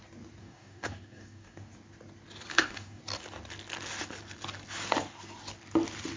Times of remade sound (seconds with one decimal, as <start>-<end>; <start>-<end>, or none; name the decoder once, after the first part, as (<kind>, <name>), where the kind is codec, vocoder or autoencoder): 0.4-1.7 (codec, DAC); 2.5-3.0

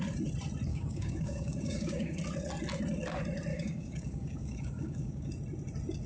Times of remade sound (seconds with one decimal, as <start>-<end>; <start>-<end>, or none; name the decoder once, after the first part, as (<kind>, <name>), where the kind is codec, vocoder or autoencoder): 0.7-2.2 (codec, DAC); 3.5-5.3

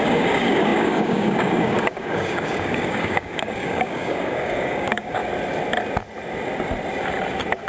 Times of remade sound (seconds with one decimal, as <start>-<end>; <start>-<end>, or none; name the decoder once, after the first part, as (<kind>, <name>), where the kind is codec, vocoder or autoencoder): 0.0-5.2 (codec, DAC)

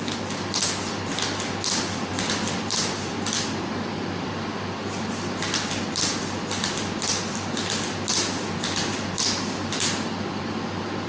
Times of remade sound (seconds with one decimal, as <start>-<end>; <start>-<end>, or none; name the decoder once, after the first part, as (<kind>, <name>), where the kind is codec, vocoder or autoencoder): none

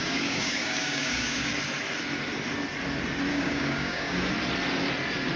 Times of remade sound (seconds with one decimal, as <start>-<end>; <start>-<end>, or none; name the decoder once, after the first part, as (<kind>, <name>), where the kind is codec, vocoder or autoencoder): 0.0-1.5 (codec, DAC); 3.3-4.3

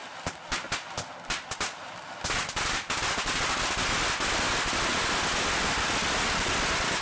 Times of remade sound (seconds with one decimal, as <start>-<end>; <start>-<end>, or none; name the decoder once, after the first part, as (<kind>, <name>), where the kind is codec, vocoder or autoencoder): none